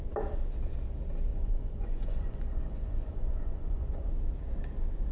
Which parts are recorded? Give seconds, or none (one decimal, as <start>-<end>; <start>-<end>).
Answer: 0.0-1.3; 4.1-5.1

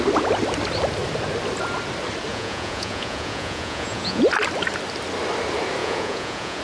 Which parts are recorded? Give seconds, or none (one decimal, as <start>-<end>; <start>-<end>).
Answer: 0.0-2.3; 4.2-5.8

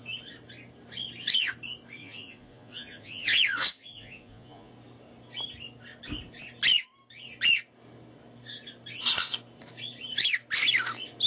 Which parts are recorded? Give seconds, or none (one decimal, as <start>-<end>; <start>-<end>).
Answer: 0.0-2.0; 4.7-11.3